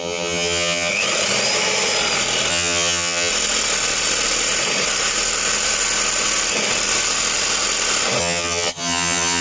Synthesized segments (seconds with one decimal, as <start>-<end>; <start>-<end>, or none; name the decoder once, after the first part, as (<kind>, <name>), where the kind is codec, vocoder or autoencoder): 0.0-0.9 (vocoder, HiFi-GAN); 2.5-3.3; 8.2-9.4